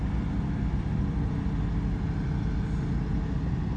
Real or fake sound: real